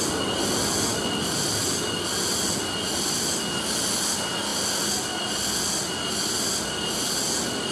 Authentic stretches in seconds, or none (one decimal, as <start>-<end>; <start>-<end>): 0.0-7.7